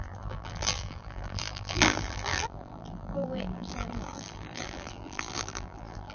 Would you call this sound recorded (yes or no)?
no